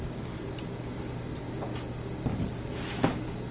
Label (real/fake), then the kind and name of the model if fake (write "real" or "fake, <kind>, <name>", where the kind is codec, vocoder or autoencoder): real